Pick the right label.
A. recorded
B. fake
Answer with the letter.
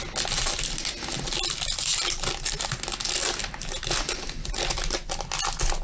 A